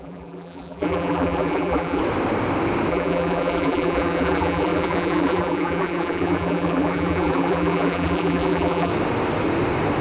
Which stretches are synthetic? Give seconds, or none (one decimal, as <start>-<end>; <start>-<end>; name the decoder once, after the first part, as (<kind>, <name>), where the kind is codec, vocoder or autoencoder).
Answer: 0.0-2.0 (vocoder, BigVGAN v2); 2.9-8.9